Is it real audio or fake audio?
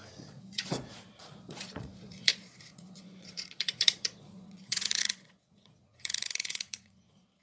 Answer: fake